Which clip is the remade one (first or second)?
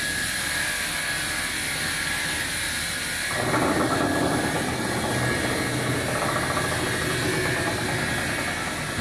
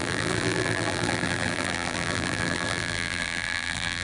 second